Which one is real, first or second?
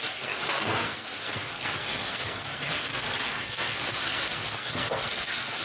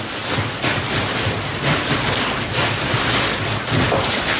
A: second